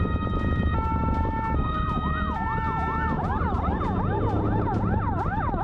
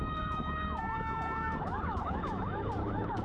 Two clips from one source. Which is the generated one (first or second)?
second